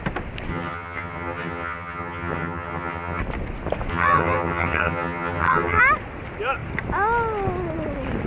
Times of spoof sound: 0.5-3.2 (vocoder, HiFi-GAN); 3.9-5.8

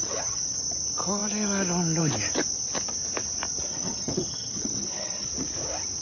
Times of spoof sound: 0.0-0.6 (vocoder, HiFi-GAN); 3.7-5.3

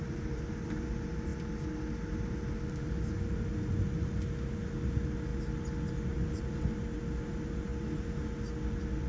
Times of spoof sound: none

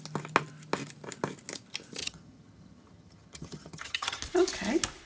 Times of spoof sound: 2.0-4.2 (vocoder, HiFi-GAN)

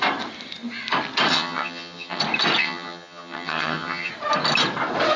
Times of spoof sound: 1.3-2.2 (vocoder, HiFi-GAN); 2.6-4.1